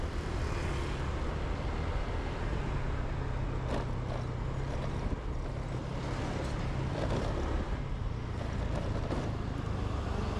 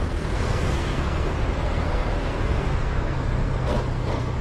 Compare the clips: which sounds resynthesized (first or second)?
second